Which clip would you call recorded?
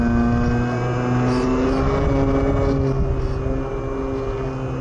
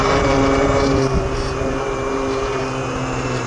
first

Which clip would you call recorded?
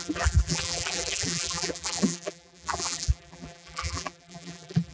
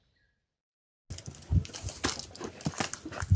second